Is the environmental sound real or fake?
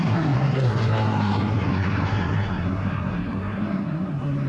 fake